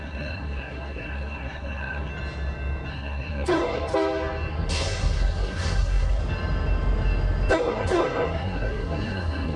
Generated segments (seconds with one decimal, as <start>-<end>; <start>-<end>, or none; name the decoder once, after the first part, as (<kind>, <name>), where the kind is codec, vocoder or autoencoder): 0.0-2.1 (codec, SNAC); 2.9-3.9; 4.5-6.2; 7.5-9.6